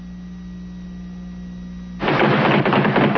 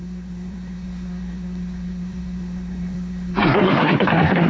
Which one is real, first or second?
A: first